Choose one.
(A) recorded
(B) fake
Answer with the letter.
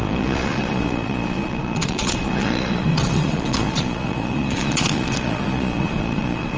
B